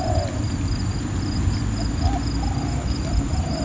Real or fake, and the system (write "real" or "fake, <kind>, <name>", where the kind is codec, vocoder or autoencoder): real